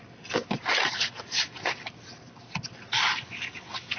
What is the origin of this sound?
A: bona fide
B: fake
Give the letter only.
A